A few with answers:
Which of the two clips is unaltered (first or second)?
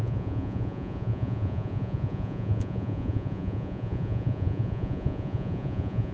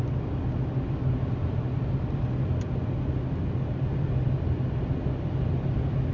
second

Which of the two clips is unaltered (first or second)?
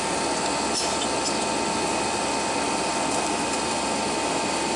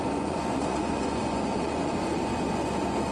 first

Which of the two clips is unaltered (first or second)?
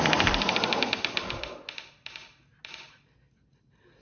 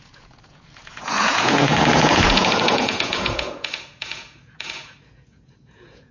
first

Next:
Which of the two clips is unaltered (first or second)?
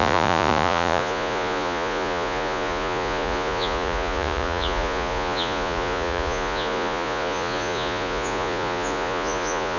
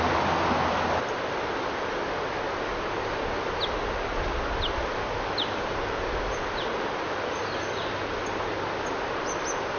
second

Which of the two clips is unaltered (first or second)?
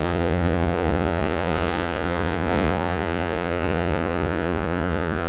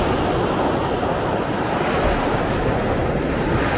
second